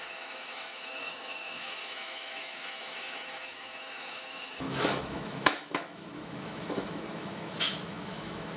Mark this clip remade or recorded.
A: remade